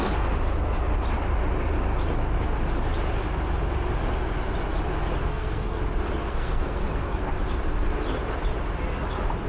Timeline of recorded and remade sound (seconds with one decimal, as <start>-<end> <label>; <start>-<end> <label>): 0.0-5.3 recorded; 5.3-5.8 remade; 5.8-6.2 recorded; 6.2-7.3 remade; 7.3-9.5 recorded